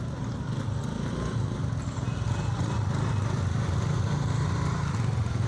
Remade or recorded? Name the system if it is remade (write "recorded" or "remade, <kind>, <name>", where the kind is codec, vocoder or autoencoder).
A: recorded